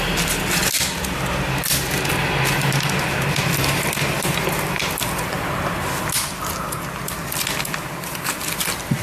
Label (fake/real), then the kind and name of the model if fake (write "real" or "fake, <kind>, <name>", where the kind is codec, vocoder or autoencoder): real